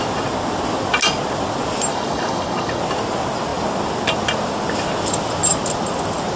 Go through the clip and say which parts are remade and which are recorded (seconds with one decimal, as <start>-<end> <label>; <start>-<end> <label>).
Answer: 0.0-1.9 recorded; 1.9-2.8 remade; 2.8-6.4 recorded